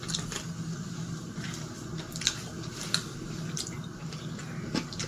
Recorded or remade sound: recorded